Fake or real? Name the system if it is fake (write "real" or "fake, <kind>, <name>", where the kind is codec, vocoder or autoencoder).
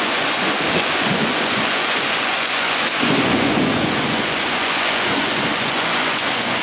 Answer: fake, vocoder, Vocos